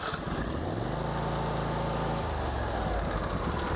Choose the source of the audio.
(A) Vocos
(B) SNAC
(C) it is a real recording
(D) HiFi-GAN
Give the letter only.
C